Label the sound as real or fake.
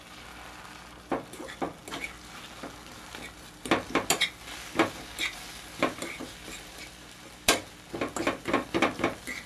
real